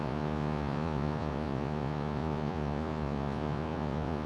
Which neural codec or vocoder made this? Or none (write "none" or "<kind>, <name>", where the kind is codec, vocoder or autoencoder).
vocoder, Vocos